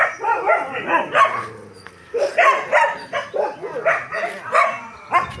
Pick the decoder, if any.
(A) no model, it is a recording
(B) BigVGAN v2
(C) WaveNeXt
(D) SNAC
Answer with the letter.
A